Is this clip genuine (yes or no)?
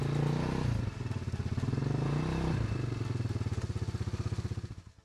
yes